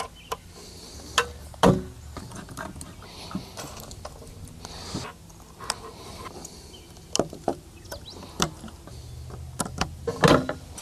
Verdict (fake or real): real